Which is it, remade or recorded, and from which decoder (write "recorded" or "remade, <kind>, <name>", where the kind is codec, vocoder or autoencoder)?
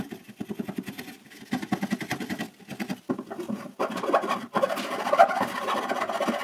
recorded